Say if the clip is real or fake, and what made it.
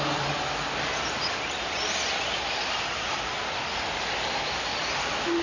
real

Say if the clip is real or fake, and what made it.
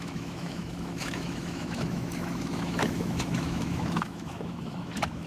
fake, autoencoder, DAC-VAE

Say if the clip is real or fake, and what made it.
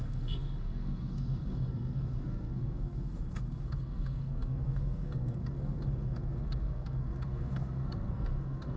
fake, codec, SNAC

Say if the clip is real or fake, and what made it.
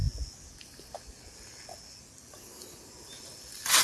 real